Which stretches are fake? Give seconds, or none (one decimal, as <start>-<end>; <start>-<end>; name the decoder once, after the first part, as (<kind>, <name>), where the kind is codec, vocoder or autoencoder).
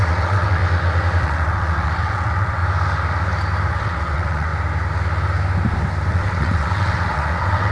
0.0-0.6 (vocoder, WaveNeXt); 1.2-2.6; 3.7-4.5; 6.1-7.7